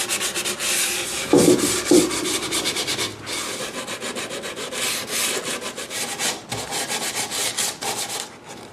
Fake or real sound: real